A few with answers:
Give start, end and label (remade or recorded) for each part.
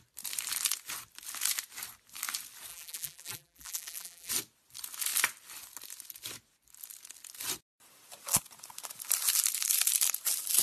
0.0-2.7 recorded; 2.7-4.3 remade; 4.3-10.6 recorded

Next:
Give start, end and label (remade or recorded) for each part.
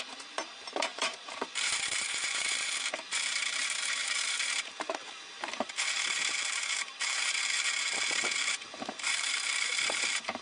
0.0-10.4 remade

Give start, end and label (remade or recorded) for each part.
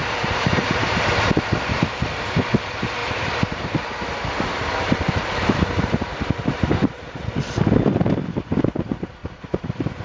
0.0-2.4 remade; 2.4-3.0 recorded; 3.0-7.6 remade; 7.6-9.2 recorded; 9.2-10.0 remade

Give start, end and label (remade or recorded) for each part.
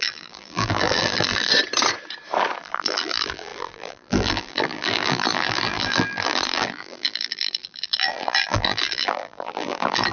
0.0-1.5 remade; 1.5-2.6 recorded; 2.6-10.1 remade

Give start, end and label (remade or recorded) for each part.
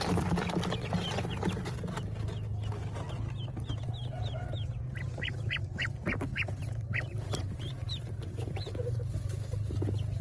0.0-6.3 recorded; 6.3-8.7 remade; 8.7-10.2 recorded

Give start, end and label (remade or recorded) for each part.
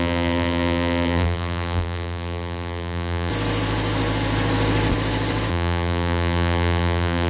0.0-3.3 remade; 3.3-5.5 recorded; 5.5-7.3 remade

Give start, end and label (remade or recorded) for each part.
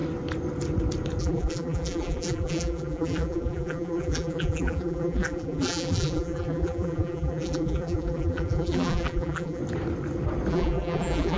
0.0-1.2 recorded; 1.2-9.6 remade; 9.6-10.5 recorded; 10.5-11.4 remade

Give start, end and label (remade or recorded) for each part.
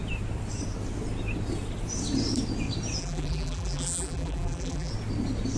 0.0-3.0 recorded; 3.0-4.9 remade; 4.9-5.6 recorded